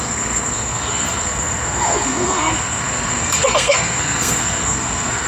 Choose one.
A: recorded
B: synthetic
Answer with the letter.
B